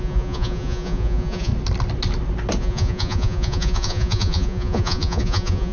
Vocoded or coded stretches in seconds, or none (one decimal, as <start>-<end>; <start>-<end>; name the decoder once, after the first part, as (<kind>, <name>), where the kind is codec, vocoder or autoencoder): 0.0-1.5 (vocoder, Vocos); 2.6-5.7